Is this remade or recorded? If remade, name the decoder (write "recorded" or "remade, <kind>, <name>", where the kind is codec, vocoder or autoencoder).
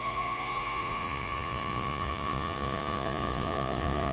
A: remade, vocoder, Vocos